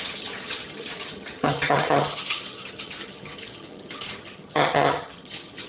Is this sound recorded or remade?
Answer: remade